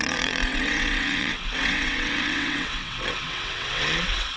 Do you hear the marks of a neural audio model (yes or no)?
yes